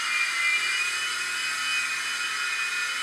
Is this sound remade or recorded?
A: recorded